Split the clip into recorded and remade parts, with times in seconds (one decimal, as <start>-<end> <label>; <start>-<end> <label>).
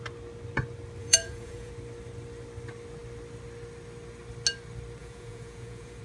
0.0-1.0 recorded; 1.0-1.7 remade; 1.7-5.0 recorded; 5.0-6.0 remade